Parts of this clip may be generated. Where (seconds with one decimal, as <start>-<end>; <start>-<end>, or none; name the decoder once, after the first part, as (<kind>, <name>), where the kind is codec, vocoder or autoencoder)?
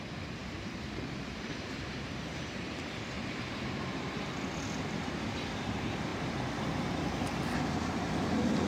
0.0-6.1 (vocoder, BigVGAN v2); 6.7-8.7